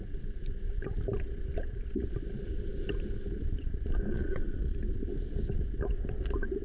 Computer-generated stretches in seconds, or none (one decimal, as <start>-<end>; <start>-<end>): 4.1-4.8